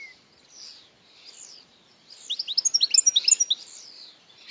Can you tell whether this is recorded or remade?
recorded